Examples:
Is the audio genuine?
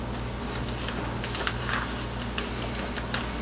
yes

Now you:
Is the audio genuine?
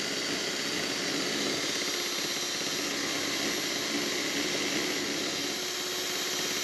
yes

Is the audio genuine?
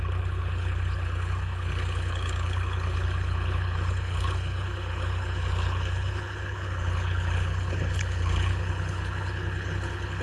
no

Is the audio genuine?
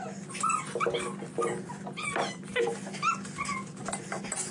yes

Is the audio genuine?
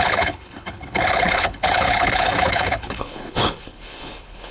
no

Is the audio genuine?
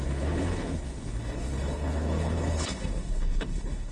no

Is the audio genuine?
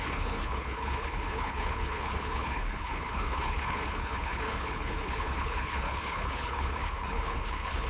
no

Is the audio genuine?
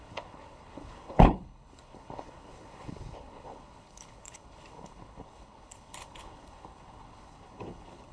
no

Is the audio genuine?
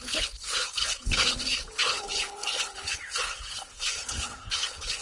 no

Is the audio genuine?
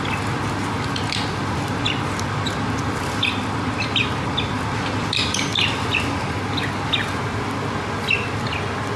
yes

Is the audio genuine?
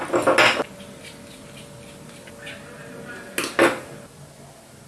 yes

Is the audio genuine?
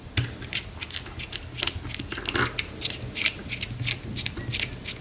yes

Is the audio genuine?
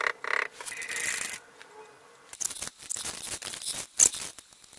yes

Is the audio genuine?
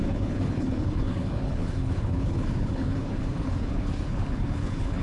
no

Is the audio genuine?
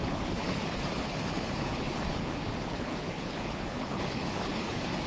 no